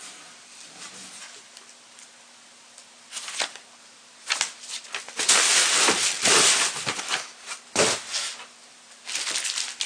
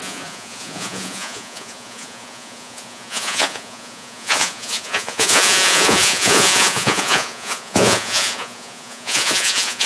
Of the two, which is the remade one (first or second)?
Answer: second